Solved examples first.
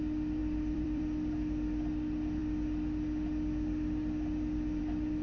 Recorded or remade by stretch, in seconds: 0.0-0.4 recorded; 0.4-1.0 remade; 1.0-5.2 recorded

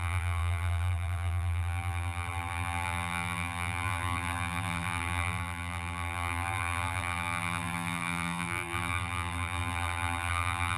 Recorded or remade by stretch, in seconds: 0.0-10.8 remade